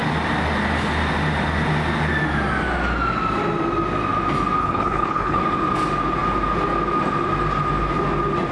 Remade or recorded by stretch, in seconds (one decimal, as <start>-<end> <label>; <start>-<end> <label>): 0.0-4.6 recorded; 4.6-5.4 remade; 5.4-8.5 recorded